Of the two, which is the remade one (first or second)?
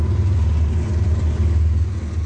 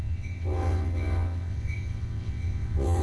second